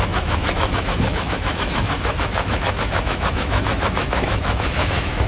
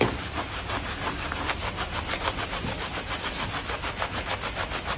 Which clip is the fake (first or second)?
first